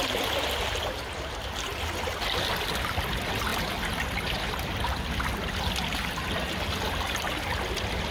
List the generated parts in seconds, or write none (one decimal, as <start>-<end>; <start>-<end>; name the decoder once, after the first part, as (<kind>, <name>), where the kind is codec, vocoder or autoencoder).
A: none